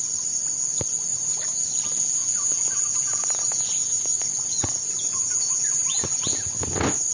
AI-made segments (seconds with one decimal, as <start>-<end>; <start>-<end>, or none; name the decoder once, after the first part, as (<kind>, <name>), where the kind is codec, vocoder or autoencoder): 1.1-1.6 (vocoder, Vocos); 2.2-6.5